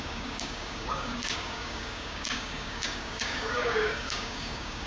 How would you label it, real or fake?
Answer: fake